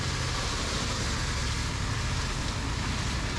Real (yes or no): yes